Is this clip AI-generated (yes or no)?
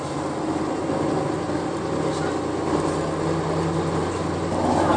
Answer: no